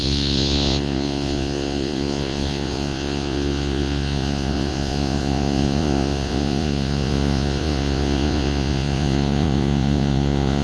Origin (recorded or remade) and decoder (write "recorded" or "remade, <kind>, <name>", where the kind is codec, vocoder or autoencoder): remade, vocoder, Vocos